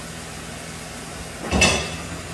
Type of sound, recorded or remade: recorded